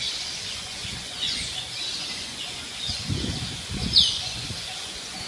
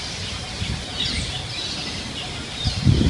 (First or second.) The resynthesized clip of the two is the first